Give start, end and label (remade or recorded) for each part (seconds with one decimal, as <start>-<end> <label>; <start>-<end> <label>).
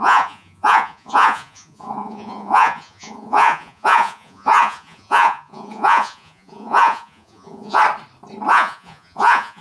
0.0-7.8 remade; 7.8-8.5 recorded; 8.5-9.6 remade